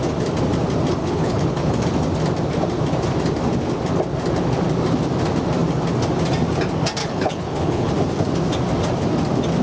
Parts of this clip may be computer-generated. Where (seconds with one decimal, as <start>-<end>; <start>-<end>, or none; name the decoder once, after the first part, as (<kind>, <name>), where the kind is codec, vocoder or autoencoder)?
1.0-1.8 (codec, HILCodec); 7.0-7.9